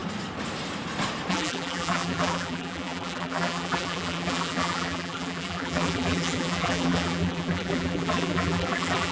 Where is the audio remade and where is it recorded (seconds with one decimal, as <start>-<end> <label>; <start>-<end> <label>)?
0.0-1.3 recorded; 1.3-9.1 remade